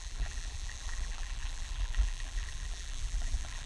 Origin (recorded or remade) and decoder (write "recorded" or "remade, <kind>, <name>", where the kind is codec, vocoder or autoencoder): remade, vocoder, BigVGAN v2